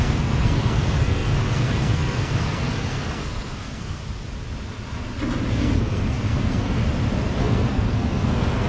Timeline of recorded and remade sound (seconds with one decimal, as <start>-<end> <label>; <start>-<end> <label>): 0.0-4.0 remade; 4.0-5.5 recorded; 5.5-6.8 remade; 6.8-7.4 recorded; 7.4-8.7 remade